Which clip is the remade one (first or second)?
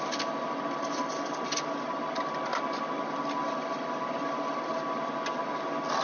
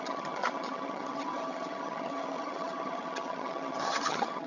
second